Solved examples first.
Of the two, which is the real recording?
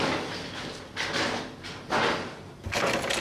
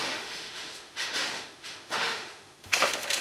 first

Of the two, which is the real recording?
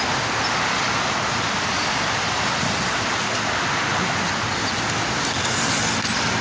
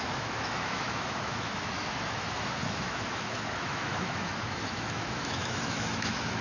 first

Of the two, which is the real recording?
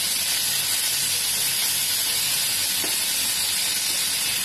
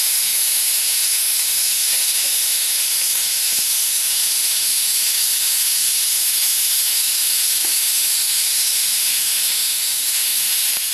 first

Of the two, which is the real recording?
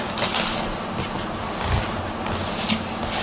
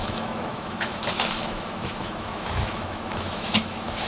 first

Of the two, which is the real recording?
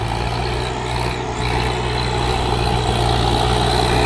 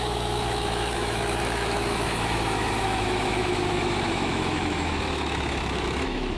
first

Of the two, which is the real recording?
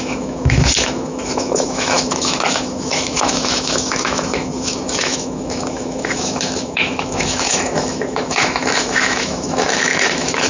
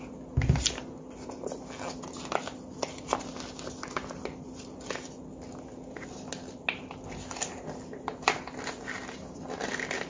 second